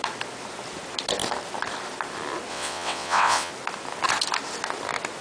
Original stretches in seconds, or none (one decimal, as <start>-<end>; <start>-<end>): 0.0-2.5; 3.5-5.2